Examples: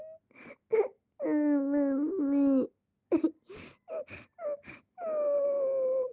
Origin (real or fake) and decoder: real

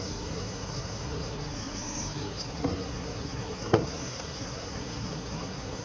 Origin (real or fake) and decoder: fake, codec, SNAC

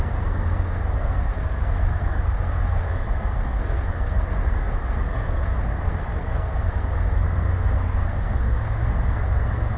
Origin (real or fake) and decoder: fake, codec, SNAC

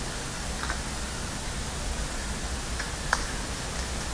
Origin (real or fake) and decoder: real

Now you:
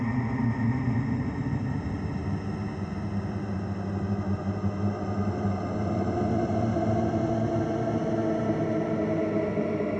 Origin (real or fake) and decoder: real